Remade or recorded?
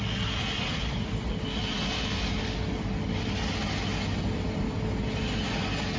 recorded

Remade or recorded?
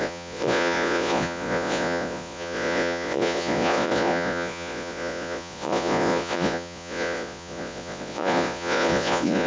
remade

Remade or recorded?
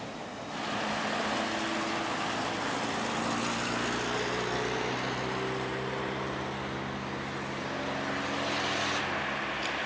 recorded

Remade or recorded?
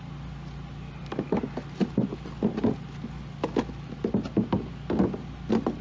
recorded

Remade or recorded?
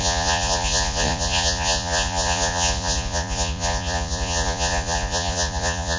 remade